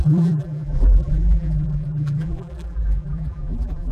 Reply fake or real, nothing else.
fake